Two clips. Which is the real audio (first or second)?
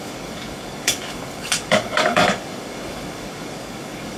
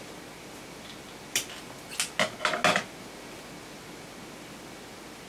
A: second